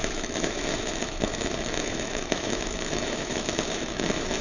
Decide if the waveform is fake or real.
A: fake